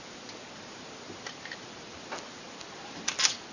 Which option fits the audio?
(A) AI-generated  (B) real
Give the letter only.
B